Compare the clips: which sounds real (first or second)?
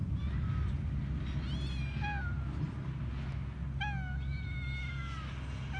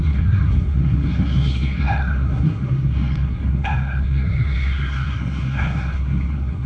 first